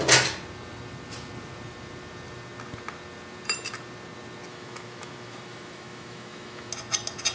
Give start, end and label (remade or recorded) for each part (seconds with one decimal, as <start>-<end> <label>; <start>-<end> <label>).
0.0-4.5 recorded; 4.5-6.7 remade; 6.7-7.3 recorded